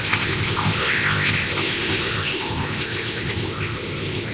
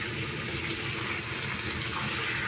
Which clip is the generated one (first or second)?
first